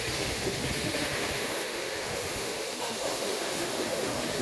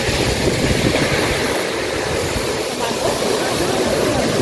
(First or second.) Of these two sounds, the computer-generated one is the first